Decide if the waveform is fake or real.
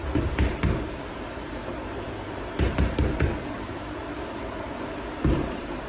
fake